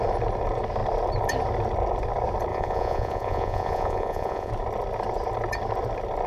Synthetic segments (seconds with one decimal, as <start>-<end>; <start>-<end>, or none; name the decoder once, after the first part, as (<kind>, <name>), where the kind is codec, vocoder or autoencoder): 2.5-4.5 (vocoder, Vocos)